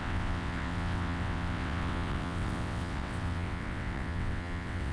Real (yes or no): no